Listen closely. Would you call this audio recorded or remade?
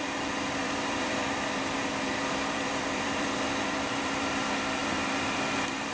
remade